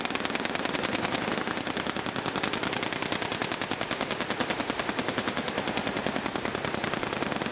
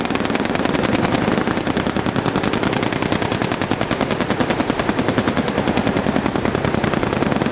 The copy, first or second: second